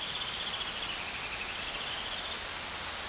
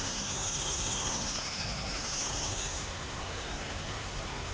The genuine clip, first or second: first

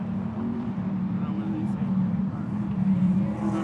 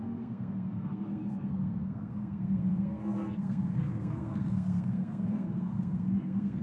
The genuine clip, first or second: first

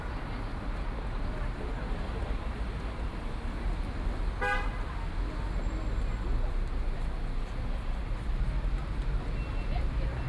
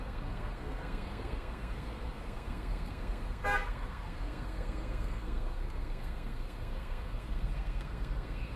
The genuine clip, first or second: first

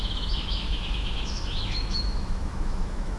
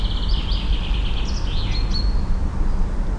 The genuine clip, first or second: second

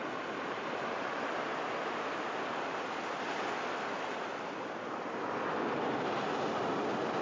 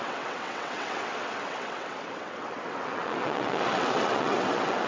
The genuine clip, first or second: first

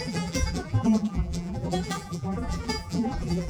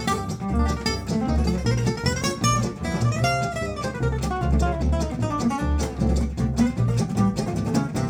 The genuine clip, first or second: second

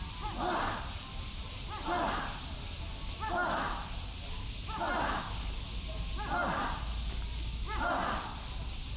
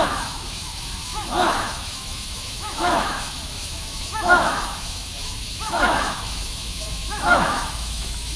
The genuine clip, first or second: first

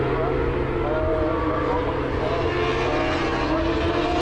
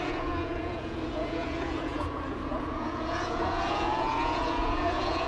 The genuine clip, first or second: first